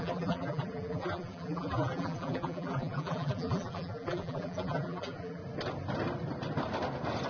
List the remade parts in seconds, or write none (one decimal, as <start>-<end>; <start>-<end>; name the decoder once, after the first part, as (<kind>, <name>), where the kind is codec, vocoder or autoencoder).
0.0-5.4 (vocoder, BigVGAN v2)